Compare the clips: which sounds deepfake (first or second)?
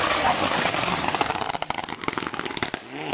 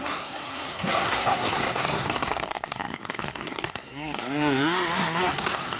second